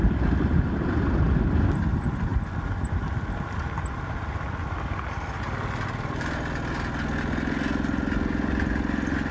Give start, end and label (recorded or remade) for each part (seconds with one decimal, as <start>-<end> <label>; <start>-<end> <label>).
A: 0.0-9.3 recorded